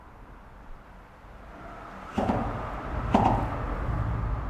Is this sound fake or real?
real